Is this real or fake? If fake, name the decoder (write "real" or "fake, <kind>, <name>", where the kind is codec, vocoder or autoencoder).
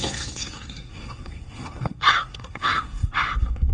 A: fake, codec, SNAC